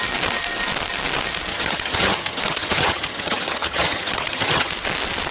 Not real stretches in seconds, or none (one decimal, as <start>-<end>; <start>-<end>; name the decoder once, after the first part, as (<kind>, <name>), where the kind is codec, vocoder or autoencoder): 1.5-4.7 (vocoder, HiFi-GAN)